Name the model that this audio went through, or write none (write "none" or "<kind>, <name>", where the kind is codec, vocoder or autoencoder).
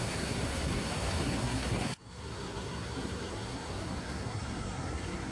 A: codec, SNAC